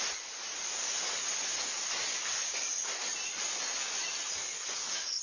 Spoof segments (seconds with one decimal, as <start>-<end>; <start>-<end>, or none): none